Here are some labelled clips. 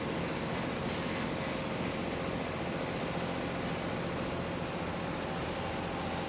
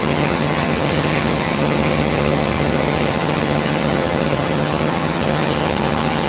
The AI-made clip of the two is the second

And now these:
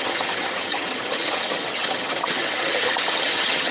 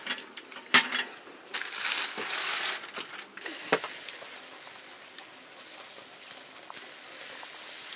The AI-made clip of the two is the first